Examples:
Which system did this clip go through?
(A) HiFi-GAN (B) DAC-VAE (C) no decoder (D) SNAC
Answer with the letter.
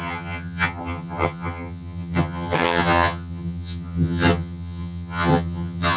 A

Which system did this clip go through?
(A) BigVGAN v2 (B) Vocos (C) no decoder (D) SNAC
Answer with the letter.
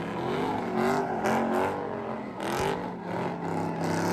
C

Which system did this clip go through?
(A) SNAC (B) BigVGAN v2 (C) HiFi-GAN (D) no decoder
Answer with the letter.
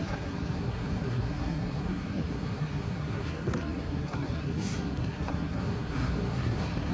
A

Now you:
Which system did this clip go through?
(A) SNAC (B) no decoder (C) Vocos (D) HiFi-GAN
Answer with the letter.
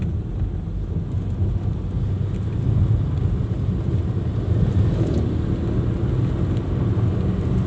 B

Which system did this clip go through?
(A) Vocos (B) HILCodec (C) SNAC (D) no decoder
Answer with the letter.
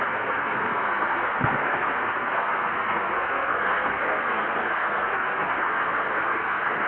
C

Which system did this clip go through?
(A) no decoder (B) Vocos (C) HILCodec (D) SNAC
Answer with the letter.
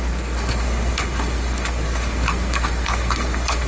D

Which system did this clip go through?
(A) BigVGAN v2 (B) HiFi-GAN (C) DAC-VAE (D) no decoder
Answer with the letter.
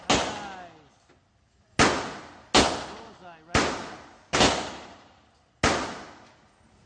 D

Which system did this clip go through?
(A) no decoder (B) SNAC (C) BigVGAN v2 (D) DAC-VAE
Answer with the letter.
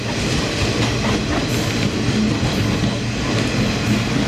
A